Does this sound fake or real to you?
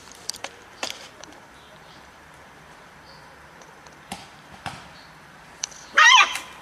fake